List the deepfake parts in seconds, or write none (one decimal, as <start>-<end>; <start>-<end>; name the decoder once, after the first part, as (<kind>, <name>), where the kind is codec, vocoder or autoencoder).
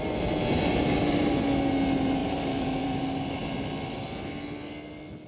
0.7-1.4 (vocoder, BigVGAN v2); 2.2-3.0